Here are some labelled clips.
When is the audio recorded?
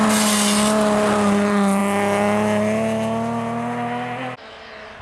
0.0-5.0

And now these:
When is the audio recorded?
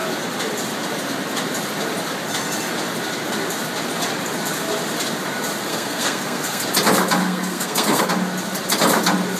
0.0-5.7; 6.6-7.2; 8.1-9.4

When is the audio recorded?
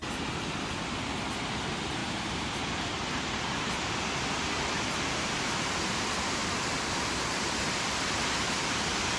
0.0-9.2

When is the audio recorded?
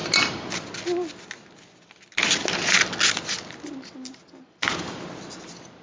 0.0-5.8